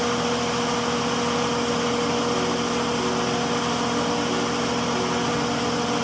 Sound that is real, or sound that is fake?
real